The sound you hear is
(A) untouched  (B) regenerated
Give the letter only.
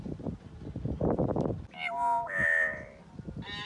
A